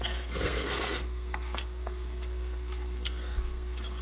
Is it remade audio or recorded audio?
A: remade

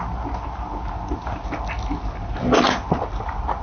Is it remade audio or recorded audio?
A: recorded